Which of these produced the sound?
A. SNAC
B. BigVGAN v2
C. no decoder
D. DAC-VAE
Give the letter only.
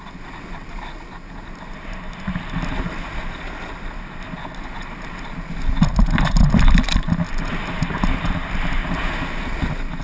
C